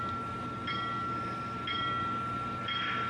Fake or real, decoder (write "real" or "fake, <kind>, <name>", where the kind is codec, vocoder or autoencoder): real